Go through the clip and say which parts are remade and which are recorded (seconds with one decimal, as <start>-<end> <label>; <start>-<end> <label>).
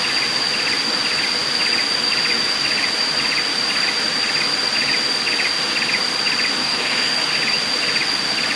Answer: 0.0-6.6 recorded; 6.6-7.2 remade; 7.2-8.6 recorded